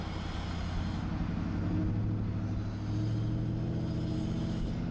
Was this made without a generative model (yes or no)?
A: yes